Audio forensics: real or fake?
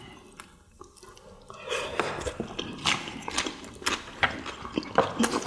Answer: real